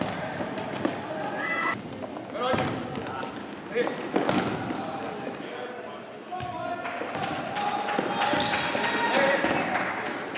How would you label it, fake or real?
real